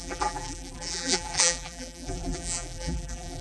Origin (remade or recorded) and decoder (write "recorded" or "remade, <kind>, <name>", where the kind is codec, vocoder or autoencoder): remade, vocoder, BigVGAN v2